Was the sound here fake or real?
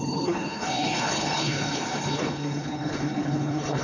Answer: fake